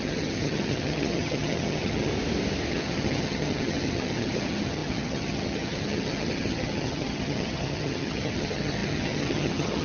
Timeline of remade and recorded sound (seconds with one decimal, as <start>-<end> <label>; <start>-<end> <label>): 0.0-2.1 remade; 2.1-2.7 recorded; 2.7-9.8 remade